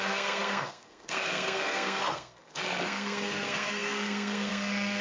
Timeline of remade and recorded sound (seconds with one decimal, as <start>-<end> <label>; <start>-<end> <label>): 0.0-5.0 remade